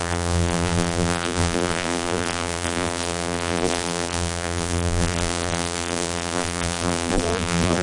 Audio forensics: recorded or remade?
remade